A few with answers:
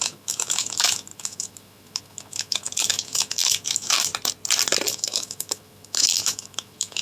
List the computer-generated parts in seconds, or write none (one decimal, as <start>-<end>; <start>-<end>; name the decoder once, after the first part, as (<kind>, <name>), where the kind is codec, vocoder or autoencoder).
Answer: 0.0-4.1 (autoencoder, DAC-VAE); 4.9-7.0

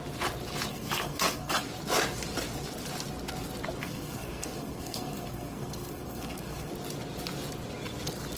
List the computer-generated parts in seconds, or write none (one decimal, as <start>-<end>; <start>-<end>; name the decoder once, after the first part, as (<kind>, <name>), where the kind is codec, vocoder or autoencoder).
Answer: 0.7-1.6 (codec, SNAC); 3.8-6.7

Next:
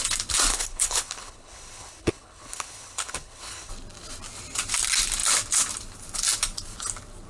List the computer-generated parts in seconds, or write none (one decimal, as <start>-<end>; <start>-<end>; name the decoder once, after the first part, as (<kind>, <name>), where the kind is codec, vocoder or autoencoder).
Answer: 0.5-3.7 (codec, HILCodec)